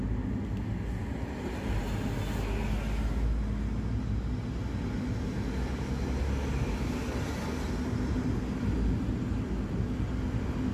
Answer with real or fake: real